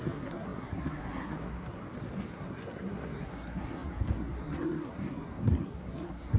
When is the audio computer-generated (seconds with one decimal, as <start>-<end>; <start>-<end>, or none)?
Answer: 0.0-1.8; 2.3-6.4